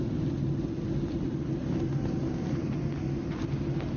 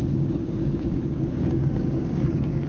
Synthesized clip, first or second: second